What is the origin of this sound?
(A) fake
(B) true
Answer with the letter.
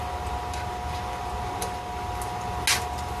B